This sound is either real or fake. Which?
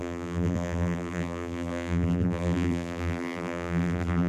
fake